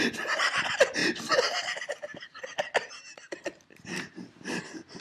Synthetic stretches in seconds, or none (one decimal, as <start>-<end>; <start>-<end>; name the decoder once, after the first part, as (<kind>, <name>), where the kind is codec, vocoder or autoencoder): none